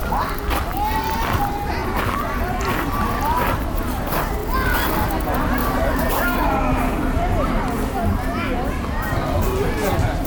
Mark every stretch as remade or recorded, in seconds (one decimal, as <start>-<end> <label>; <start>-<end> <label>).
0.0-5.6 recorded; 5.6-6.1 remade; 6.1-10.3 recorded